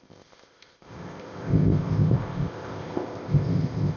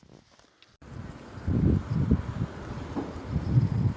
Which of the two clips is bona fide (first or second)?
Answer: second